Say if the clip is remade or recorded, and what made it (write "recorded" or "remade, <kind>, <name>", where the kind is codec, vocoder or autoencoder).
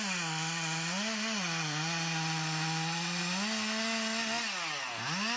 recorded